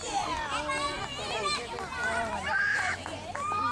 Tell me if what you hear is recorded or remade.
remade